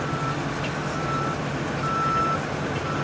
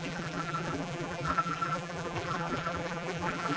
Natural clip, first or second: first